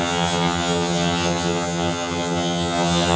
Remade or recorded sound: remade